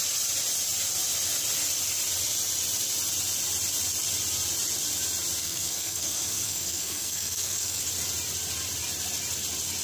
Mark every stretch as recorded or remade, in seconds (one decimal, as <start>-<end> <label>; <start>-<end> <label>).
0.0-5.4 recorded; 5.4-7.8 remade; 7.8-9.8 recorded